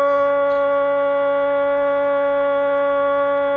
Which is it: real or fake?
real